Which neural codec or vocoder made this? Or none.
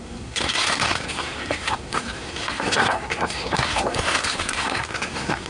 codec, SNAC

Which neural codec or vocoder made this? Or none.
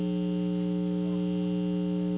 none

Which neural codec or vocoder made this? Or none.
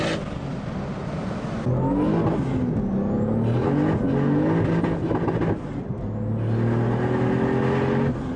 none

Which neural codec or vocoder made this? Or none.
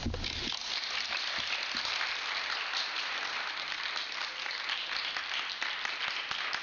none